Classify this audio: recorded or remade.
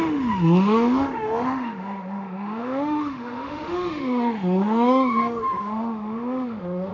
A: remade